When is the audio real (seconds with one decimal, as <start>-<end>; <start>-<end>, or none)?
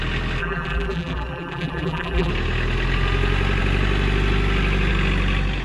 0.0-0.4; 2.3-5.6